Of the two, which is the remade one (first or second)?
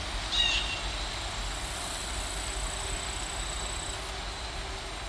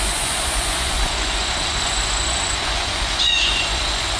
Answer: second